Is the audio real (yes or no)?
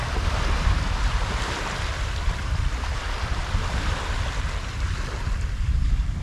yes